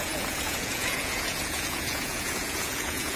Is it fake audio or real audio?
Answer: fake